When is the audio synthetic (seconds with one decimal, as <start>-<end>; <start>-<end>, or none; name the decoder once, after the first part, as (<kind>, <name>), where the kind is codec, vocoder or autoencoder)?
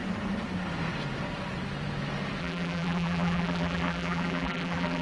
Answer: 2.4-5.0 (vocoder, BigVGAN v2)